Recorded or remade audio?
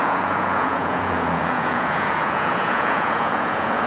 remade